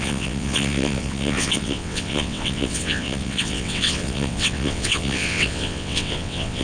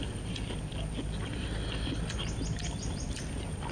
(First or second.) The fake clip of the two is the first